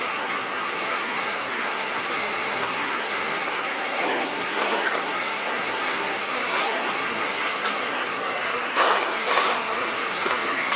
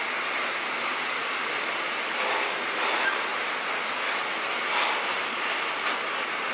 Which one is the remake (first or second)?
first